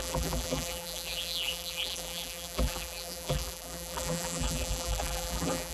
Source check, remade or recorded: remade